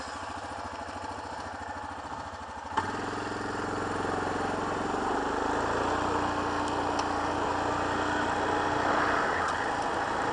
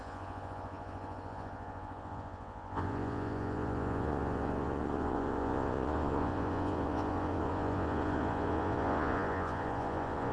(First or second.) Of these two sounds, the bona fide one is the first